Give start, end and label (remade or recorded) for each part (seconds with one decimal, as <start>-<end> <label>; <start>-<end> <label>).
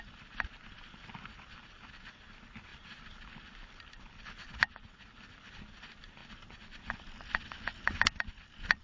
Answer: 0.0-8.8 recorded